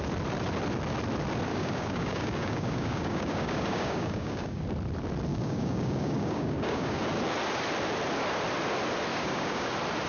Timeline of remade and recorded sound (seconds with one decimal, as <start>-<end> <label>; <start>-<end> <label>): 0.0-1.5 recorded; 1.5-4.7 remade; 4.7-5.3 recorded; 5.3-7.0 remade; 7.0-9.1 recorded; 9.1-9.7 remade; 9.7-10.1 recorded